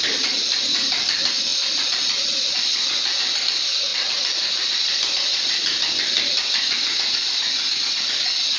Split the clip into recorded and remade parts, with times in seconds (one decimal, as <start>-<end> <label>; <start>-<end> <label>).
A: 0.0-8.6 recorded